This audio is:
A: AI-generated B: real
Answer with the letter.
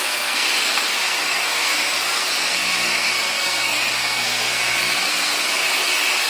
A